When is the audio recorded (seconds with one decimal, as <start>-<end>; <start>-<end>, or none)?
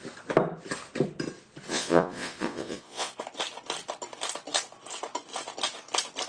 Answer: 0.0-1.7; 3.1-6.3